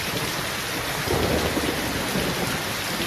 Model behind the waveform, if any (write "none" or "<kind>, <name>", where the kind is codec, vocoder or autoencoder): none